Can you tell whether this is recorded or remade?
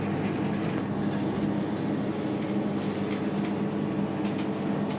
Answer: recorded